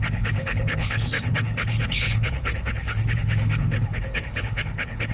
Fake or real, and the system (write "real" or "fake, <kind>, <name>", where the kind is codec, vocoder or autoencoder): fake, codec, HILCodec